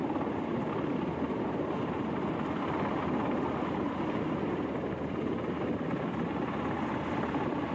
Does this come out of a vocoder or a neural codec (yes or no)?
no